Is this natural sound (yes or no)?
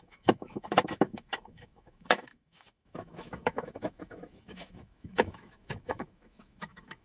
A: no